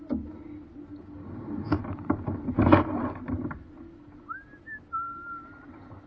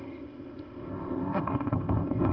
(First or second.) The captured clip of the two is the first